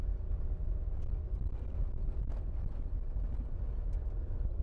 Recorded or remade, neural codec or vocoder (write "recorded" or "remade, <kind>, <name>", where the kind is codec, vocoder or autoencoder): recorded